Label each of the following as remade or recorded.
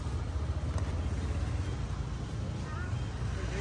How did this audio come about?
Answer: recorded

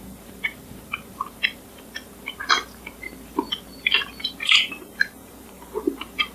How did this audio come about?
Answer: remade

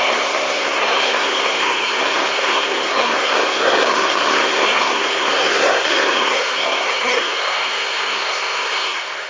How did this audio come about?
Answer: remade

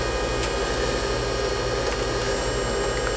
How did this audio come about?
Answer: recorded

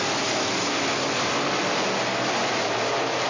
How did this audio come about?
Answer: recorded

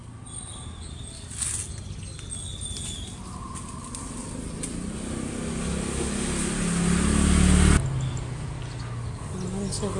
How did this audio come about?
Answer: recorded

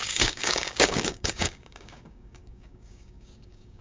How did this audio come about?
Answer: remade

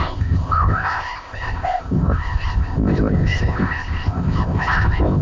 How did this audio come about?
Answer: remade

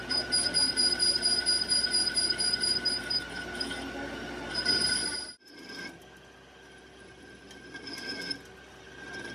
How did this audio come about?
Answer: recorded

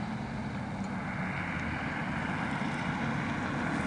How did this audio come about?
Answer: recorded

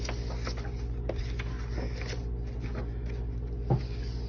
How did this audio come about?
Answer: recorded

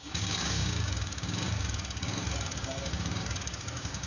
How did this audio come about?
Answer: remade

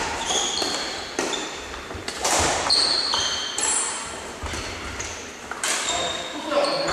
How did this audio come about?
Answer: remade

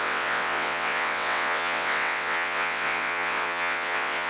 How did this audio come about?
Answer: remade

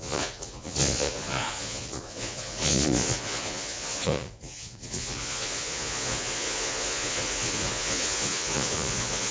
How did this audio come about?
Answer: remade